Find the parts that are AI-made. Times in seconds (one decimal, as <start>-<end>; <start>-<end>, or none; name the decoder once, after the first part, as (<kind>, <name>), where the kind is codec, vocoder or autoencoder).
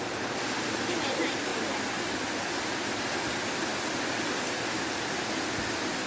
none